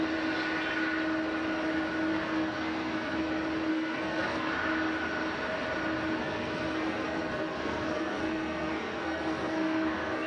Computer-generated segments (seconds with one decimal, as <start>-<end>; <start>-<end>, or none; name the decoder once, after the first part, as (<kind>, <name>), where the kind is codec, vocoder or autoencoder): 2.1-3.3 (codec, SNAC); 3.7-4.5; 6.2-10.3